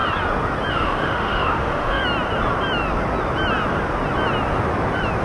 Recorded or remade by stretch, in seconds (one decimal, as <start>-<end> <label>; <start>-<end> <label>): 0.0-0.7 recorded; 0.7-2.0 remade; 2.0-5.2 recorded